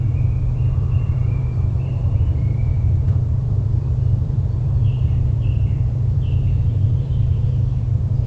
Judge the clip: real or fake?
fake